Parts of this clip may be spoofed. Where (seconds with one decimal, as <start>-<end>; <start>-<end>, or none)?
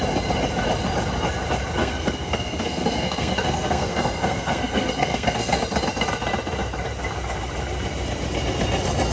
1.8-5.6